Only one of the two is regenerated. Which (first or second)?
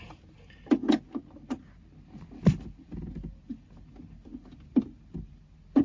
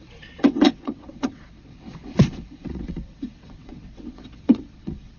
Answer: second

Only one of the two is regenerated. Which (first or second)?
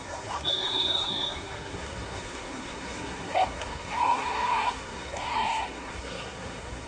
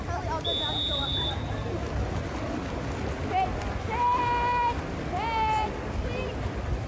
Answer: first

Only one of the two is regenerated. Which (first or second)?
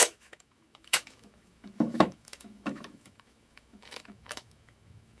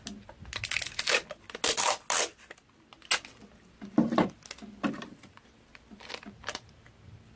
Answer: first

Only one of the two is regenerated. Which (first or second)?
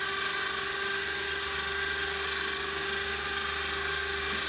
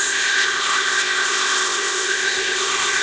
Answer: second